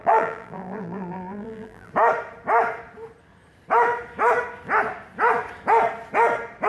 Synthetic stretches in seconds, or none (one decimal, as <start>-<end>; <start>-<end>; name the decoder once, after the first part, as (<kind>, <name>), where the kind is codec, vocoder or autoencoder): 0.0-1.9 (vocoder, BigVGAN v2)